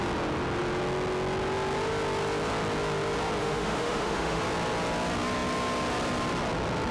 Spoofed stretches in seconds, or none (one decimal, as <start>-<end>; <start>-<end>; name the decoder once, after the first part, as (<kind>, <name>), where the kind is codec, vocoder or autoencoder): 3.4-4.4 (autoencoder, DAC-VAE)